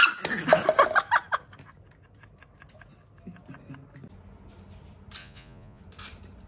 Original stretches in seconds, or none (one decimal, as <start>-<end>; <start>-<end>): 0.0-5.2; 5.8-6.5